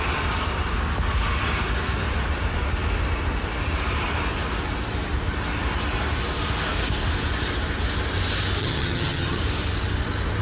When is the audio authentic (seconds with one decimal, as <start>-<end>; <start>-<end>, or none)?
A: 0.0-8.6; 9.4-10.4